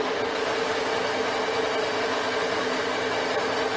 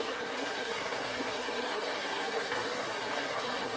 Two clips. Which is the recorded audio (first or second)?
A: first